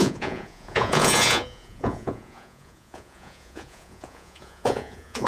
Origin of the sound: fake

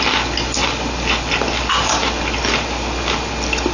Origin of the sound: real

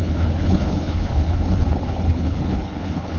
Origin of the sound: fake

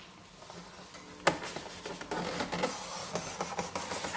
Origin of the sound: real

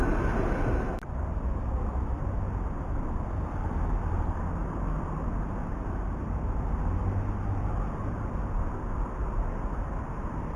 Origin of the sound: real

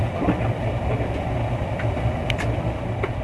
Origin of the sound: real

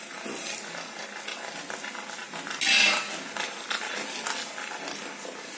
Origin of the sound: real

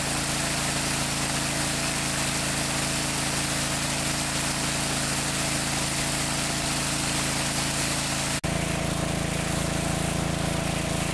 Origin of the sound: real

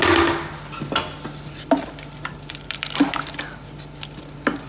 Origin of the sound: real